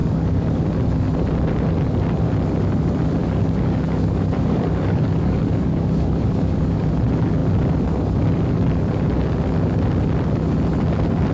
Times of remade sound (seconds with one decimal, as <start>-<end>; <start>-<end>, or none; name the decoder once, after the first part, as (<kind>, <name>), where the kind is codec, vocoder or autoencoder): 0.0-0.6 (codec, DAC); 3.2-6.9